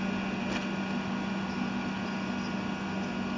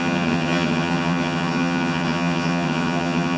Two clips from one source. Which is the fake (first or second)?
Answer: second